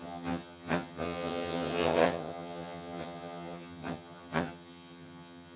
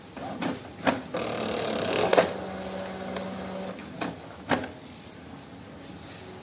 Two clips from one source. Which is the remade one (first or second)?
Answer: first